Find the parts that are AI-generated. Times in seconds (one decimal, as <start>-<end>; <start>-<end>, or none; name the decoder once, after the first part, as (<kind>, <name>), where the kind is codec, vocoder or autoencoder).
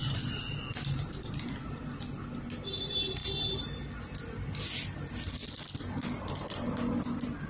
none